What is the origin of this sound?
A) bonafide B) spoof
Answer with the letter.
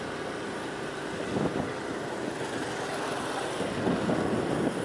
A